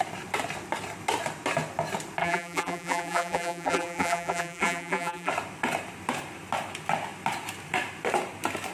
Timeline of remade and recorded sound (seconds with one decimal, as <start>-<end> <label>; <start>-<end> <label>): 0.0-2.2 recorded; 2.2-5.3 remade; 5.3-8.7 recorded